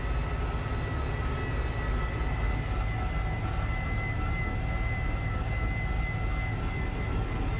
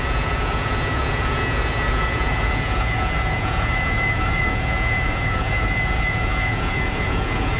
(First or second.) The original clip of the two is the first